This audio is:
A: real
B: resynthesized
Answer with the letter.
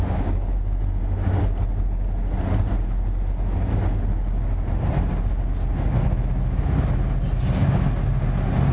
A